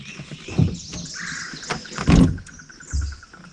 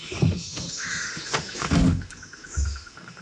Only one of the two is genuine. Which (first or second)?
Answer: first